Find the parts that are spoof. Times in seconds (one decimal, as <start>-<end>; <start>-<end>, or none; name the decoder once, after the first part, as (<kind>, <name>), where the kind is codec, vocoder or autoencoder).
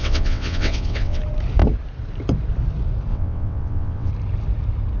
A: 0.0-1.2 (vocoder, WaveNeXt); 3.1-4.1